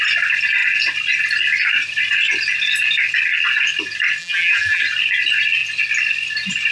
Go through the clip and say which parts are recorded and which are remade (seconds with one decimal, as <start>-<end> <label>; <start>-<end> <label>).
0.0-4.2 recorded; 4.2-4.8 remade; 4.8-6.7 recorded